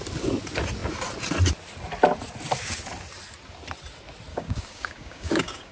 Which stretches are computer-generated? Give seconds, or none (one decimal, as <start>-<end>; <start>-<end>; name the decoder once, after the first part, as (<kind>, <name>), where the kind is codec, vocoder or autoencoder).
4.3-5.7 (codec, DAC)